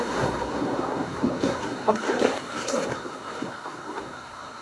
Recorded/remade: remade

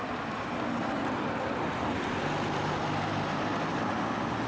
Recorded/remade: recorded